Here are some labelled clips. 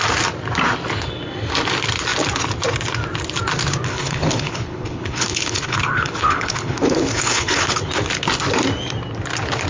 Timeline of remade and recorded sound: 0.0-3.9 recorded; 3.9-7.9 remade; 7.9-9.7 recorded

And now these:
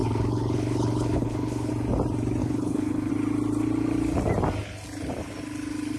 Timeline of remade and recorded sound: 0.0-1.7 remade; 1.7-2.4 recorded; 2.4-3.1 remade; 3.1-6.0 recorded

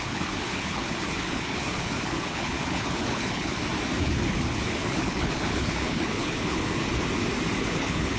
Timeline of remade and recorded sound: 0.0-3.5 remade; 3.5-4.0 recorded; 4.0-6.8 remade; 6.8-7.6 recorded; 7.6-8.2 remade